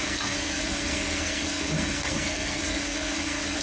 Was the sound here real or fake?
fake